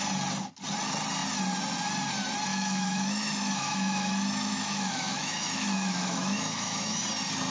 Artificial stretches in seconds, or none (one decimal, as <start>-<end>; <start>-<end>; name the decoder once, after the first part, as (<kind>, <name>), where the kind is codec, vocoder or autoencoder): 2.5-7.0 (autoencoder, DAC-VAE)